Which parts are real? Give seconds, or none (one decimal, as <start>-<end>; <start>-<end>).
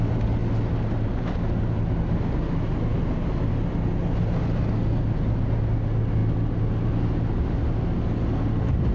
0.0-8.9